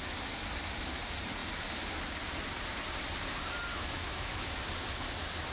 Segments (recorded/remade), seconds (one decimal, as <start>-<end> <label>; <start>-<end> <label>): 0.0-3.7 recorded; 3.7-4.5 remade; 4.5-5.5 recorded

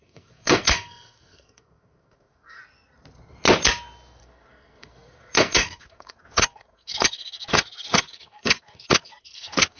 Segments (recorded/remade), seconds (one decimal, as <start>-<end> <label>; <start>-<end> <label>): 0.0-2.6 remade; 2.6-4.2 recorded; 4.2-9.8 remade

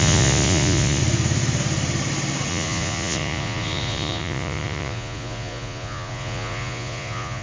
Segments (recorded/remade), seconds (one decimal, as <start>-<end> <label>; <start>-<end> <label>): 0.0-1.0 remade; 1.0-2.5 recorded; 2.5-7.4 remade

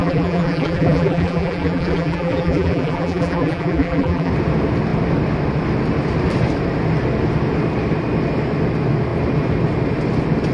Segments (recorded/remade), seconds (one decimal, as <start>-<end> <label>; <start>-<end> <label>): 0.0-4.3 remade; 4.3-10.5 recorded

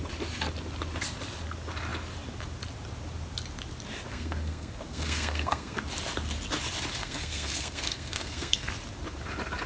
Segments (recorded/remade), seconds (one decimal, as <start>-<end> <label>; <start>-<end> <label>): 0.0-4.1 recorded; 4.1-5.8 remade; 5.8-7.0 recorded; 7.0-8.7 remade; 8.7-9.7 recorded

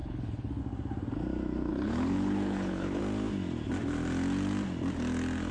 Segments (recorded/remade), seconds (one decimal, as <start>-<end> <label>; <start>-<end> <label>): 0.0-0.6 remade; 0.6-1.7 recorded; 1.7-3.0 remade; 3.0-5.5 recorded

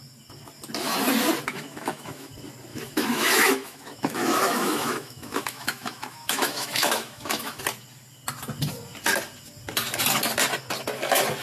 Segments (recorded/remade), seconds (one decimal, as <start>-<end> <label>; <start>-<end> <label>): 0.0-1.5 recorded; 1.5-2.3 remade; 2.3-2.7 recorded; 2.7-7.6 remade; 7.6-11.4 recorded

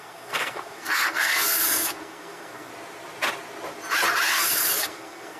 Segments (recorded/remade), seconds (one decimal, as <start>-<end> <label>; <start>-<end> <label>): 0.0-2.7 remade; 2.7-4.3 recorded; 4.3-5.4 remade